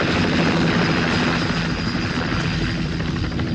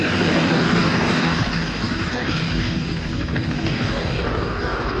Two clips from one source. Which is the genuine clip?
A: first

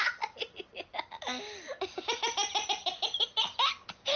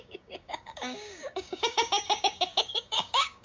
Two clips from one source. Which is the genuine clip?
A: first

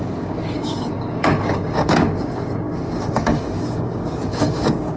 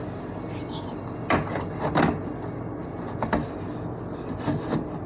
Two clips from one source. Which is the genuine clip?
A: second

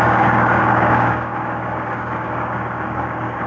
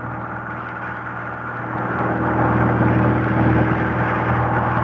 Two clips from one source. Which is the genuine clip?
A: second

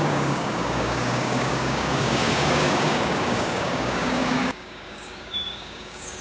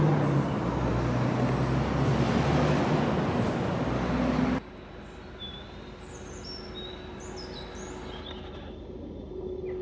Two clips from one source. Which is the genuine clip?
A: second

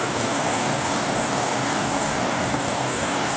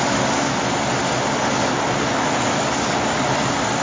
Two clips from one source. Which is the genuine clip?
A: second